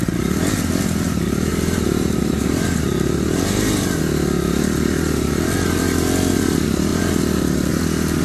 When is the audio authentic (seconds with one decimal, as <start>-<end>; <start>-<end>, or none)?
0.0-1.5; 4.0-8.2